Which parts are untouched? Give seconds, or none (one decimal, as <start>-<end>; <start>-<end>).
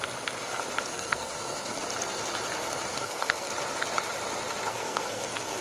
0.0-0.9; 1.8-2.9; 3.5-4.7